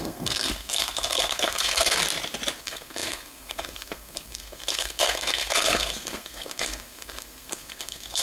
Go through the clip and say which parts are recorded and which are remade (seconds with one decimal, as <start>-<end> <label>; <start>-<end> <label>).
0.0-2.0 remade; 2.0-2.6 recorded; 2.6-8.2 remade